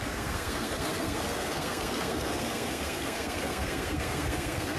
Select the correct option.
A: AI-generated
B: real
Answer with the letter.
A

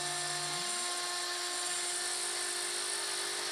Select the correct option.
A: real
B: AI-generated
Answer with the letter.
A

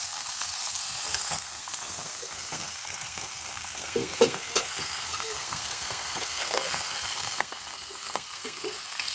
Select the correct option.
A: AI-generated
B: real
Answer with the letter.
A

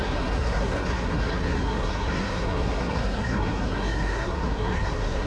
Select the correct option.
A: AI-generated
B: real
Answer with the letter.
A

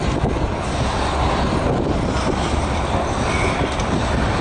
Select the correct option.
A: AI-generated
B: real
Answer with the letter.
B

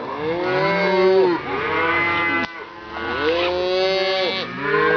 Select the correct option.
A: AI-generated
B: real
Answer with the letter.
B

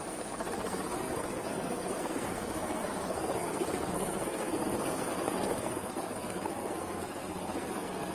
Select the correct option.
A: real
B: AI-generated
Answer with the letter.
B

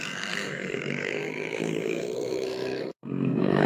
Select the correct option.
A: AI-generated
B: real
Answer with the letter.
A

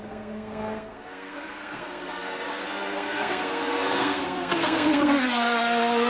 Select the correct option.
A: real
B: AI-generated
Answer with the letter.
B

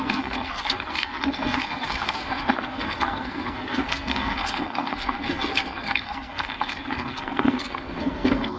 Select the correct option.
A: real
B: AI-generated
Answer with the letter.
B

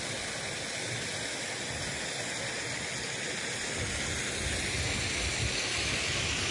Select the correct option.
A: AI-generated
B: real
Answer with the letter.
B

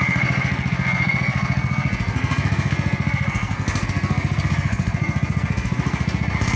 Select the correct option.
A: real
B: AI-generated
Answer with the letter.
B